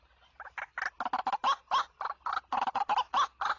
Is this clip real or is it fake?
real